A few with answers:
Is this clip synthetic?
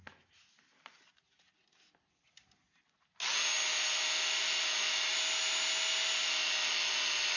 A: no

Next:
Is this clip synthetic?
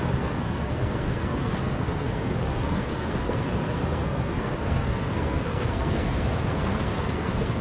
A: yes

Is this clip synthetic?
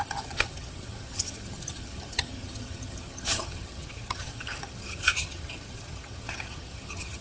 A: yes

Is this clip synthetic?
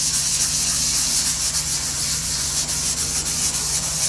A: yes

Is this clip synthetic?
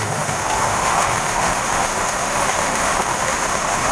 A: yes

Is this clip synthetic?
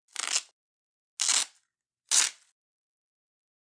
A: no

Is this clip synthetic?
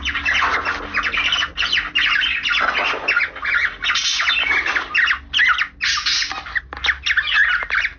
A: no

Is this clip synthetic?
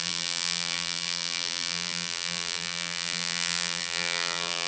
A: yes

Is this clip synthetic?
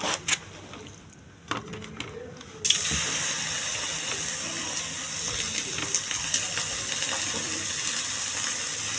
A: no